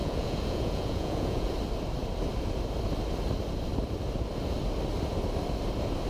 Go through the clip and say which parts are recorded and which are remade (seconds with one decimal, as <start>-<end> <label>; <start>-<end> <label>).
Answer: 0.0-1.5 remade; 1.5-6.1 recorded

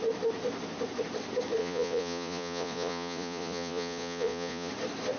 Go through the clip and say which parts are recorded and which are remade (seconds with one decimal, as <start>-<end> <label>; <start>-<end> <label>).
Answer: 0.0-1.6 recorded; 1.6-4.7 remade; 4.7-5.2 recorded

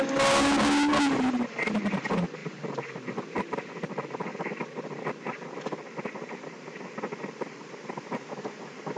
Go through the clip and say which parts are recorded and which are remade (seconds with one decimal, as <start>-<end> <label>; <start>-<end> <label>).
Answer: 0.0-9.0 recorded

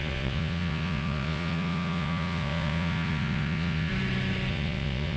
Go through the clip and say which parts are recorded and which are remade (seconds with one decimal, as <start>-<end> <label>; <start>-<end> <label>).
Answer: 0.0-3.9 remade; 3.9-4.5 recorded; 4.5-5.2 remade